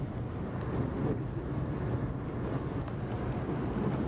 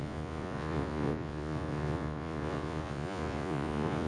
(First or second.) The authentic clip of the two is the first